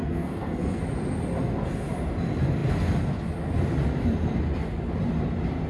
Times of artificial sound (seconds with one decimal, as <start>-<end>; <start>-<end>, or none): 0.0-0.8